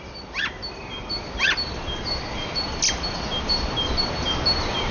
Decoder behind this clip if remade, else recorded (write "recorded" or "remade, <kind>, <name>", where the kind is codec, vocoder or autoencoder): recorded